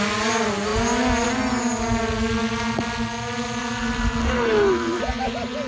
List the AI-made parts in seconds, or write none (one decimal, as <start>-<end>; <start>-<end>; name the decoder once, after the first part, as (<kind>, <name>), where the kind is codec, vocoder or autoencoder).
4.2-5.0 (codec, SNAC)